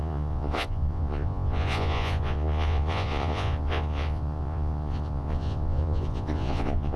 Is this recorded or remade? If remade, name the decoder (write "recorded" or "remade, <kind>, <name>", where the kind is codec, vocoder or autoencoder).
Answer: remade, vocoder, Vocos